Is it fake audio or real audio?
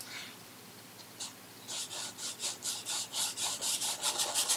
real